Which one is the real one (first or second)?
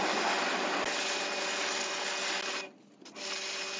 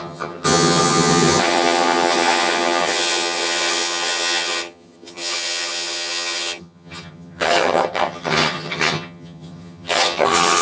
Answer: first